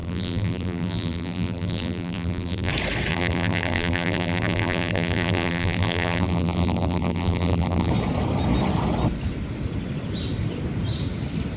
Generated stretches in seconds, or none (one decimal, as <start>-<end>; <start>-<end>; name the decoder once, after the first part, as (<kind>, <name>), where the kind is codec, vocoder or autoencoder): 0.0-2.7 (vocoder, BigVGAN v2); 3.1-7.9